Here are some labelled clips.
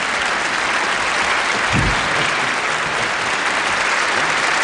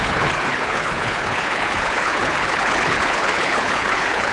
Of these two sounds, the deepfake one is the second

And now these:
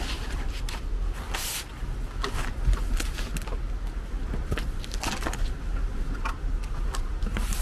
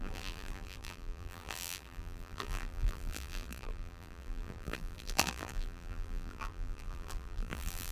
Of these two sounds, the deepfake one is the second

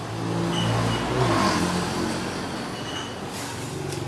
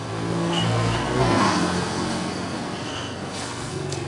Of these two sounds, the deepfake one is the second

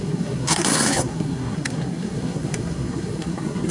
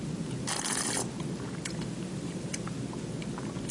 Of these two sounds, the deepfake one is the first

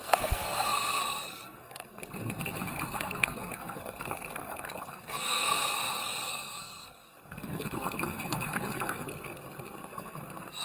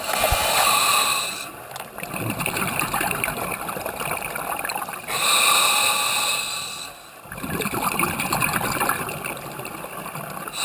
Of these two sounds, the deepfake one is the first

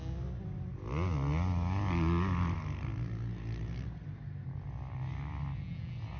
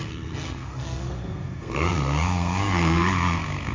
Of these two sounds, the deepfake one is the second